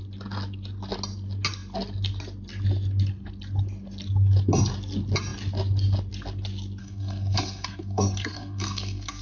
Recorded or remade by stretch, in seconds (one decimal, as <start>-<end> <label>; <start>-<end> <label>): 0.0-6.8 recorded; 6.8-9.2 remade